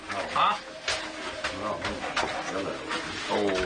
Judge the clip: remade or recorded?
recorded